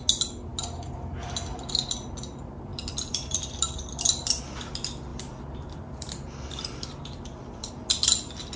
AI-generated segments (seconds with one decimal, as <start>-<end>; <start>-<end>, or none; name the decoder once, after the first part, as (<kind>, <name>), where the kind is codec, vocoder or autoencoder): 2.7-4.4 (vocoder, BigVGAN v2); 5.1-7.7